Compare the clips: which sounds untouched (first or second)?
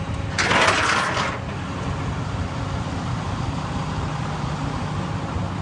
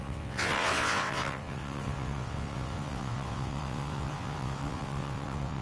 first